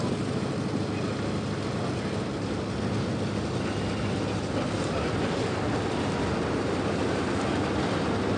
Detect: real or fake real